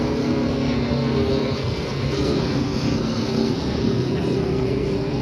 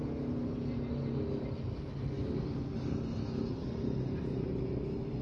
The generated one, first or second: first